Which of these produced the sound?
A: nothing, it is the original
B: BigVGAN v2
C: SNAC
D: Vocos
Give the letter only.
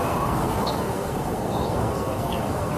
C